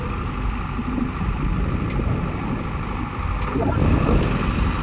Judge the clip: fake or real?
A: real